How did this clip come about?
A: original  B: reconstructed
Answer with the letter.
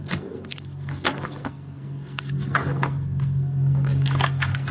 B